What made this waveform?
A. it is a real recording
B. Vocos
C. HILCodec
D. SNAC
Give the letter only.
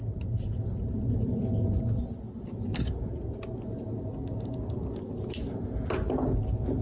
A